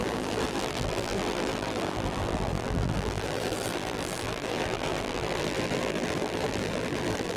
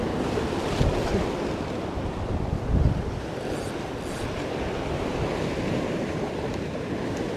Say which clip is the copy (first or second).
first